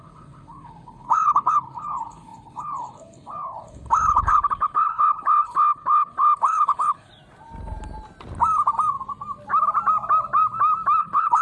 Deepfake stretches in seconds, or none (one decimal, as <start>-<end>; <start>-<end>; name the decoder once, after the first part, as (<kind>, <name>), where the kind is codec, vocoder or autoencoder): 0.0-7.1 (codec, HILCodec); 11.0-11.4